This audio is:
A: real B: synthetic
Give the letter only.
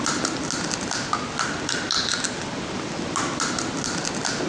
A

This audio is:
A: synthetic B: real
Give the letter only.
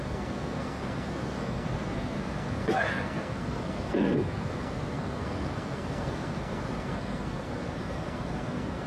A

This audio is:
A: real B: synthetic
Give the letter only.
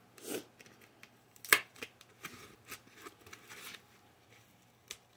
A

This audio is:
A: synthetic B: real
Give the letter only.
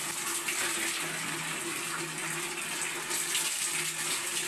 B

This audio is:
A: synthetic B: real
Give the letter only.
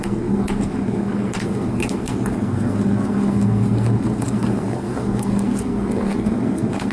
A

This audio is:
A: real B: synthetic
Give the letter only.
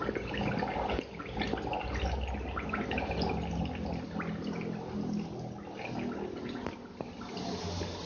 A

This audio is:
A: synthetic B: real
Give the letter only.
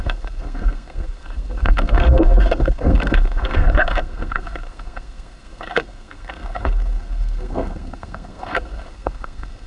A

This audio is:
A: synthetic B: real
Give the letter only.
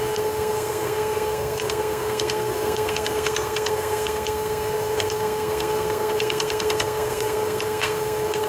A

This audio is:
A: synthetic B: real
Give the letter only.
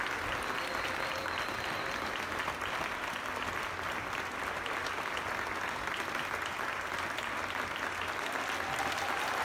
B